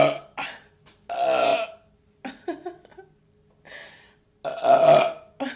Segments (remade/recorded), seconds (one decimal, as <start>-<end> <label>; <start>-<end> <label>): 0.0-5.6 recorded